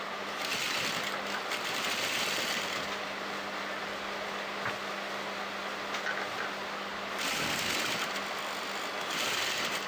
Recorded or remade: recorded